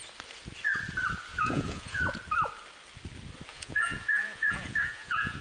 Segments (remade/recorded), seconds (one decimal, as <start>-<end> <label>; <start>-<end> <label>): 0.0-1.3 recorded; 1.3-2.0 remade; 2.0-3.5 recorded; 3.5-5.4 remade